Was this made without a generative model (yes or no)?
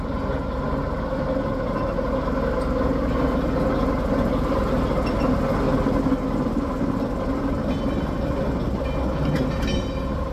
yes